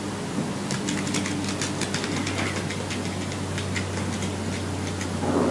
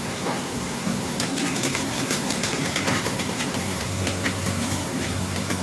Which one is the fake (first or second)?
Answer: second